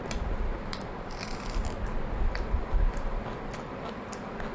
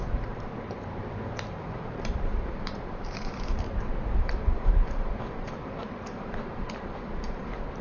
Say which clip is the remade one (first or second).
second